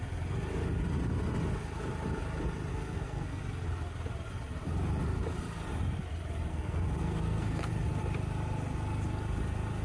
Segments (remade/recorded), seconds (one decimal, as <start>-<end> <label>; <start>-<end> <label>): 0.0-2.7 recorded; 2.7-3.4 remade; 3.4-6.5 recorded; 6.5-7.7 remade; 7.7-9.8 recorded